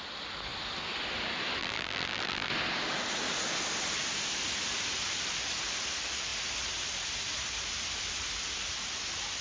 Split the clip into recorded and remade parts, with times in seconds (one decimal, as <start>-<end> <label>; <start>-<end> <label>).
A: 0.0-1.6 recorded; 1.6-2.5 remade; 2.5-9.4 recorded